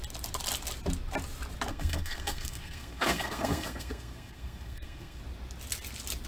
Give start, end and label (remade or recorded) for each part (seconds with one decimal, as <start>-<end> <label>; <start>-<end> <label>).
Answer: 0.0-1.7 recorded; 1.7-5.2 remade; 5.2-6.3 recorded